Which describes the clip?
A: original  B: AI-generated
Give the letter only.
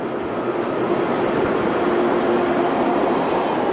A